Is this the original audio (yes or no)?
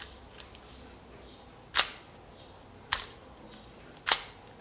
yes